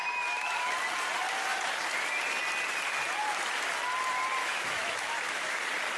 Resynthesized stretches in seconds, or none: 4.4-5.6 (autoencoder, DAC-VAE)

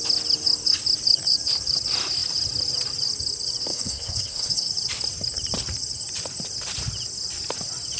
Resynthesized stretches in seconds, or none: 3.7-4.7 (codec, HILCodec)

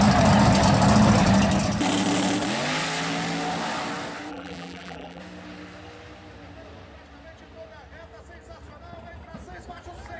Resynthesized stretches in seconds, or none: 4.3-5.2 (vocoder, BigVGAN v2)

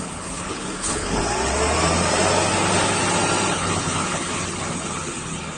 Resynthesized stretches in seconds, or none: 0.0-1.2 (codec, HILCodec); 3.5-5.6

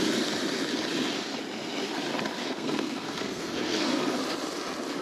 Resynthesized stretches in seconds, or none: 2.4-4.2 (codec, SNAC)

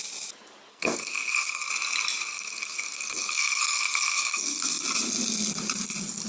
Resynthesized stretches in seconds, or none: 0.7-1.7 (codec, SNAC); 2.3-4.8